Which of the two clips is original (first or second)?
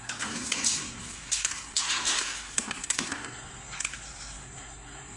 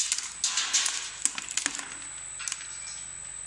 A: second